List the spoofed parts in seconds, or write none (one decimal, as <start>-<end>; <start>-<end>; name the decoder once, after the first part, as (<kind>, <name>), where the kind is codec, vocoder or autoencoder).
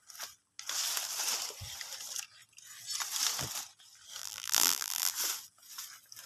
4.2-5.1 (vocoder, BigVGAN v2)